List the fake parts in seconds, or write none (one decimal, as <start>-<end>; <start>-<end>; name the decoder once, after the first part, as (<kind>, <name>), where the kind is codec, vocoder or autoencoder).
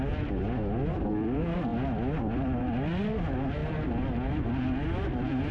none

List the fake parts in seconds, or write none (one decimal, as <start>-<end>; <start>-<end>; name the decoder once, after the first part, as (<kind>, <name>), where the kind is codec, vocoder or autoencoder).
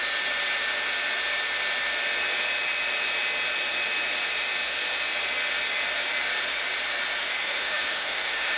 7.4-8.6 (autoencoder, DAC-VAE)